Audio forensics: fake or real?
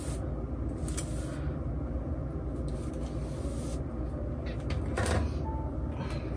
real